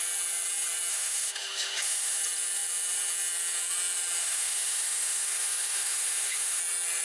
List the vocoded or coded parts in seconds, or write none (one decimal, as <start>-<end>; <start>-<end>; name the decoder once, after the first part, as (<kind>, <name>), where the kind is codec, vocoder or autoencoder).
0.9-2.2 (autoencoder, DAC-VAE); 4.2-6.6